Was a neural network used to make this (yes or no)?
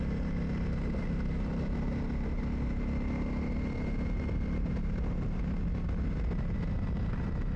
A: no